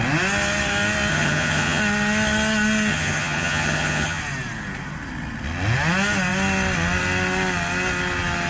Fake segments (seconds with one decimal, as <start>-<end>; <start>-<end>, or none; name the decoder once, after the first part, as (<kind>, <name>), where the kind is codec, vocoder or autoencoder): 1.1-1.8 (vocoder, HiFi-GAN); 2.9-4.2